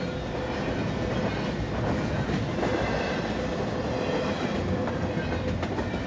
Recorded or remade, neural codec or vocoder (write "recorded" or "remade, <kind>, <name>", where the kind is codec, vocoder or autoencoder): recorded